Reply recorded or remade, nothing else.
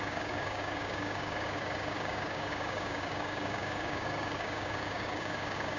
remade